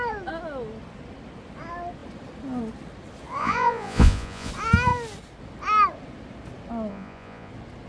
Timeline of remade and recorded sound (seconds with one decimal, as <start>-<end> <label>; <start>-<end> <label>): 0.0-3.4 recorded; 3.4-4.5 remade; 4.5-6.9 recorded; 6.9-7.5 remade; 7.5-7.9 recorded